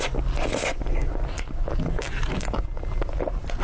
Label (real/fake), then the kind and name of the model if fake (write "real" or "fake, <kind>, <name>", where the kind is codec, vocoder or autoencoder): real